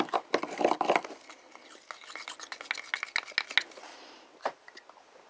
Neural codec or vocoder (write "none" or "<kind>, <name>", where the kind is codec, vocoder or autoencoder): none